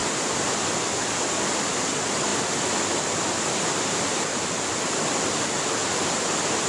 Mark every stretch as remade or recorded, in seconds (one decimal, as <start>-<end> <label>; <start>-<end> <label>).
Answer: 0.0-1.0 recorded; 1.0-2.3 remade; 2.3-3.4 recorded; 3.4-5.8 remade; 5.8-6.7 recorded